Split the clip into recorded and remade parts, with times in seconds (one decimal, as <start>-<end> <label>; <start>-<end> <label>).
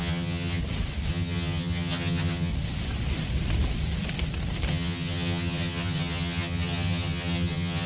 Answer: 0.0-0.6 remade; 0.6-1.1 recorded; 1.1-2.5 remade; 2.5-4.7 recorded; 4.7-7.9 remade